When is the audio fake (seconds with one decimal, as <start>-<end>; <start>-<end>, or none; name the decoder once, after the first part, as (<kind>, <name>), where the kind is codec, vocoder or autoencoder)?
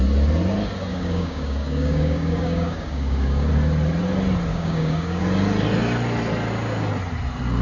0.9-3.5 (codec, DAC); 4.5-5.2